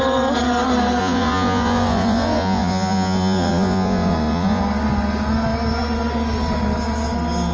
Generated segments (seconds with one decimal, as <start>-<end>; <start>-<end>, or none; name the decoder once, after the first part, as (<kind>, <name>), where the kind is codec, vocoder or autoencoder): 1.0-4.6 (vocoder, Vocos)